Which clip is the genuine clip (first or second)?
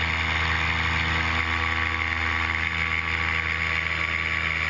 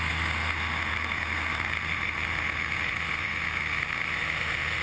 first